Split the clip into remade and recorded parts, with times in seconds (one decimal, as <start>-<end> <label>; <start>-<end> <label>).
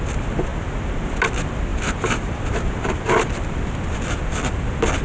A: 0.0-1.7 recorded; 1.7-3.3 remade; 3.3-5.0 recorded